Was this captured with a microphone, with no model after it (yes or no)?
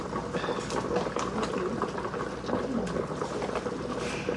yes